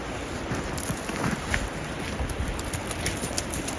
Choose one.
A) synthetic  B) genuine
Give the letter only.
B